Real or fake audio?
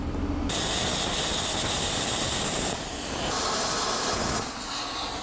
real